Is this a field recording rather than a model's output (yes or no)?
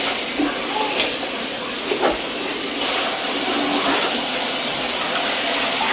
yes